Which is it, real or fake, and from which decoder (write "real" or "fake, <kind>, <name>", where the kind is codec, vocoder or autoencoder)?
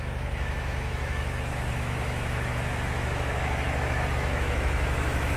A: fake, autoencoder, DAC-VAE